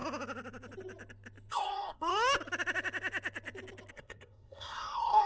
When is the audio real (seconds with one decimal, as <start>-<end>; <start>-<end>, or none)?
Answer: 0.0-1.5; 2.1-3.9